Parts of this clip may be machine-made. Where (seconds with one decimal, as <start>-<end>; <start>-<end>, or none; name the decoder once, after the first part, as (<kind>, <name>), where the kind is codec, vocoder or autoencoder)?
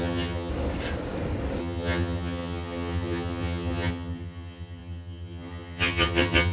0.0-0.5 (vocoder, HiFi-GAN); 1.6-6.5